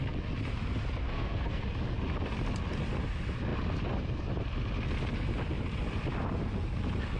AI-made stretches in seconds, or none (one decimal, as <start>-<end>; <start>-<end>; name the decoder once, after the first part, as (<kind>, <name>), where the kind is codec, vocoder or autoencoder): 1.0-1.6 (codec, SNAC)